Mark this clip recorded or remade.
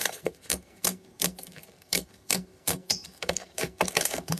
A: remade